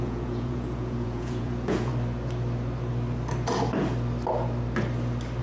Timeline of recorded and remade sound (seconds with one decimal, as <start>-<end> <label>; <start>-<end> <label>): 0.0-1.9 remade; 1.9-5.4 recorded